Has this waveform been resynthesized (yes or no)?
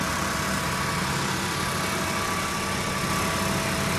no